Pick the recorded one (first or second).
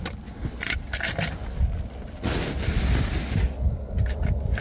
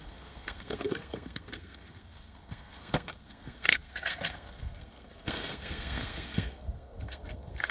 first